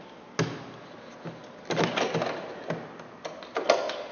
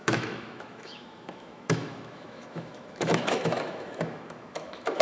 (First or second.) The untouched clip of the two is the first